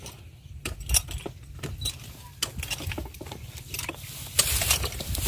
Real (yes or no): yes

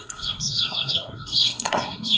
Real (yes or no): no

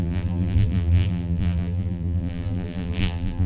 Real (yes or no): no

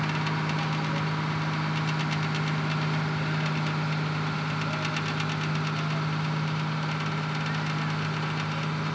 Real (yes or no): yes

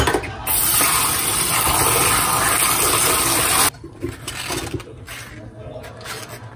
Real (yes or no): yes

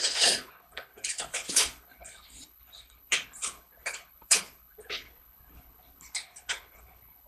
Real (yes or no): no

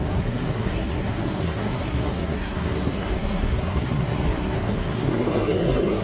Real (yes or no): no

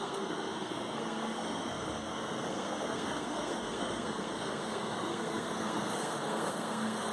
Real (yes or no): no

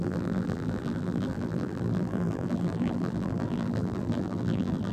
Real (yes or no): no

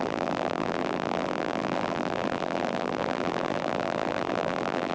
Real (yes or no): no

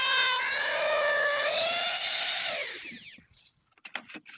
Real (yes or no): yes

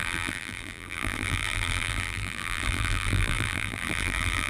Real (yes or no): no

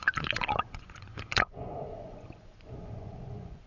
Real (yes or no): no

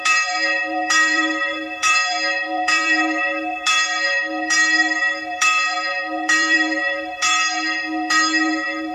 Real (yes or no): no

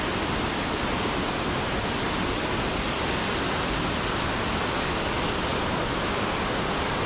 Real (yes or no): yes